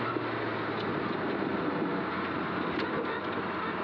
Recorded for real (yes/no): yes